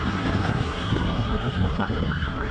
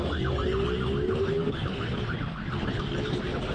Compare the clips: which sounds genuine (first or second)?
second